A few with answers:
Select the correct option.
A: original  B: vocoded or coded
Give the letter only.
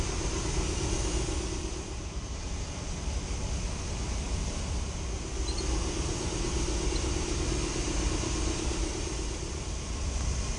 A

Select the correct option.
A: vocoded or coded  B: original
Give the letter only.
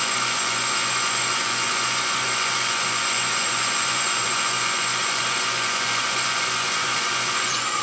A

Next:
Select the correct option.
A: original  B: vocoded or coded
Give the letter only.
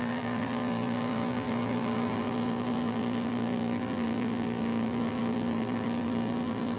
B